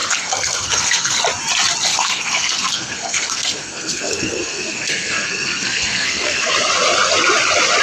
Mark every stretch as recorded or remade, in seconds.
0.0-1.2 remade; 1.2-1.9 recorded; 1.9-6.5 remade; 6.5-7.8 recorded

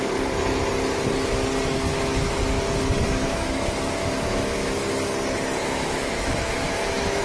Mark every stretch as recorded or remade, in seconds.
0.0-1.9 recorded; 1.9-2.4 remade; 2.4-3.2 recorded; 3.2-4.8 remade; 4.8-5.6 recorded; 5.6-7.2 remade